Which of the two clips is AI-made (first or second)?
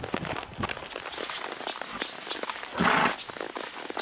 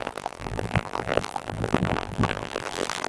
second